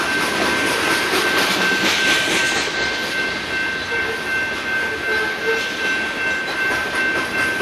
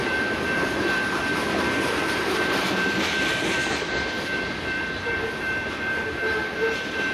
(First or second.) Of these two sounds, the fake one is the second